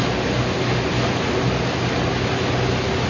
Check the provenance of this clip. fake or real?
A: real